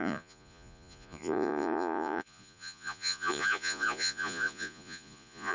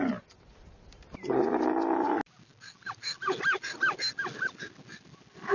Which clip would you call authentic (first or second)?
second